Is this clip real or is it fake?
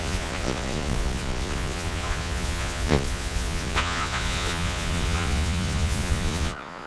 fake